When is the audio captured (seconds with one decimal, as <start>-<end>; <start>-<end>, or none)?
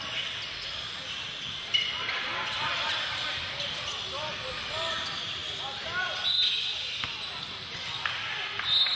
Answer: 0.0-9.0